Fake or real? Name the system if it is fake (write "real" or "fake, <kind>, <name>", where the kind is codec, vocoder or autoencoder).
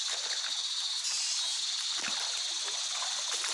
real